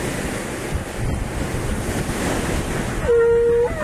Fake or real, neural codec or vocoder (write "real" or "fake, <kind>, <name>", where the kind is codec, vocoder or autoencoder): real